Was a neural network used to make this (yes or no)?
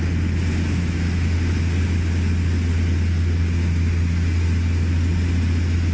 no